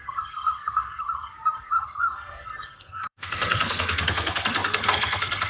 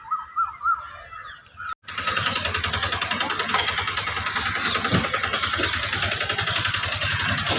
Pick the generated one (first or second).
first